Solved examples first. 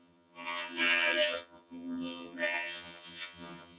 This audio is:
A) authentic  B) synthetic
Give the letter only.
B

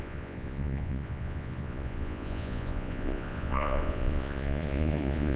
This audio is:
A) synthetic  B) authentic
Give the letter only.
A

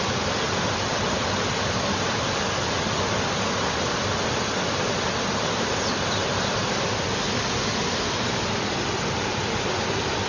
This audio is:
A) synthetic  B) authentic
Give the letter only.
B